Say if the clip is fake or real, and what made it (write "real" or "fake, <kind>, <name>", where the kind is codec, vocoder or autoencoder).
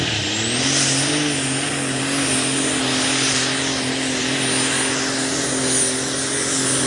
real